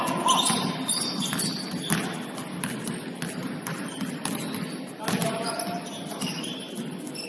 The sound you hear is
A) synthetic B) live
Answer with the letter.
B